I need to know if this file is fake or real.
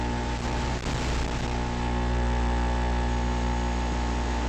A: real